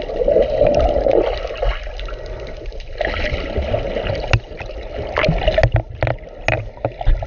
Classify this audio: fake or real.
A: real